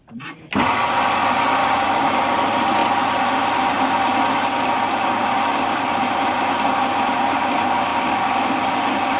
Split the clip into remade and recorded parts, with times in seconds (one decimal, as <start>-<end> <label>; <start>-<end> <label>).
0.0-1.6 recorded; 1.6-2.2 remade; 2.2-9.2 recorded